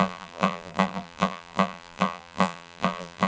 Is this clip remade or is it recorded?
remade